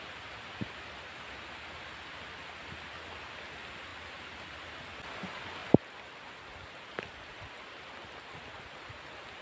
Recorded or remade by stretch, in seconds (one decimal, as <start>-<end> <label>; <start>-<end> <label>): 0.0-9.4 recorded